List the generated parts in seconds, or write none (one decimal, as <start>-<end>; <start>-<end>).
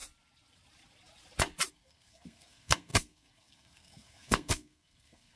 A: 1.7-5.4